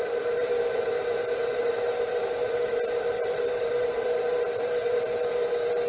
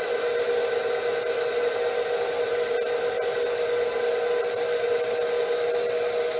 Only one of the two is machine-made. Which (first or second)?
first